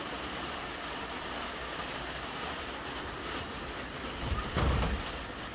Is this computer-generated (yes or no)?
no